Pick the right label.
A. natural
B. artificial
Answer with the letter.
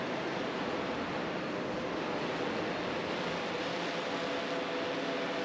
A